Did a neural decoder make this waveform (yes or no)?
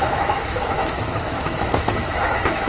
yes